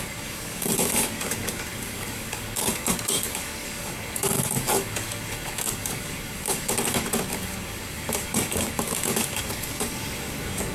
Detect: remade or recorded remade